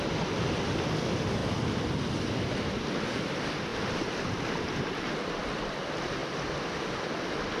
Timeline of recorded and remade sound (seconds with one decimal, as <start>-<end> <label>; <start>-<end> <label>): 0.0-7.6 recorded